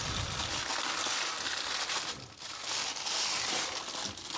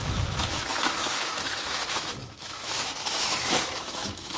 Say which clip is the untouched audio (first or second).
first